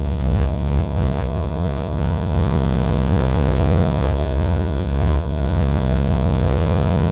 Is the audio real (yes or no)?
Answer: no